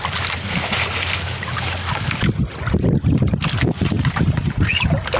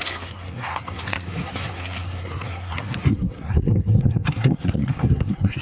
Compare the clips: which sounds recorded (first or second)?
first